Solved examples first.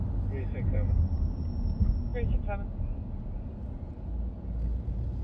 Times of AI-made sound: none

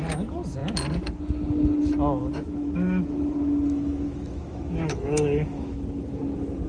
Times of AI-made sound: 2.2-6.2 (autoencoder, DAC-VAE)